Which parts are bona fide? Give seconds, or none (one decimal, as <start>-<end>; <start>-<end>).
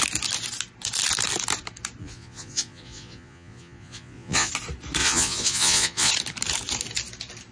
0.0-2.0; 4.5-5.0; 6.1-7.5